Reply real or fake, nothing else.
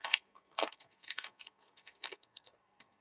fake